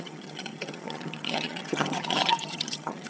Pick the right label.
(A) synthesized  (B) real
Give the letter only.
A